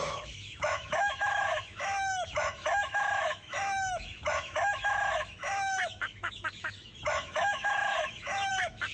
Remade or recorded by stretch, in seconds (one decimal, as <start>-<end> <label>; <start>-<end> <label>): 0.0-8.9 remade